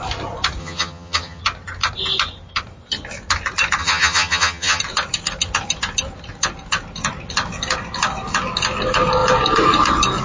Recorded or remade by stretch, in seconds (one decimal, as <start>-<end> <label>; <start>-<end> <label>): 0.0-0.6 recorded; 0.6-1.4 remade; 1.4-3.8 recorded; 3.8-4.8 remade; 4.8-10.2 recorded